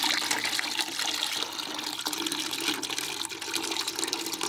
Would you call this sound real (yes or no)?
yes